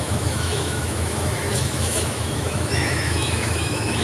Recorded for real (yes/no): no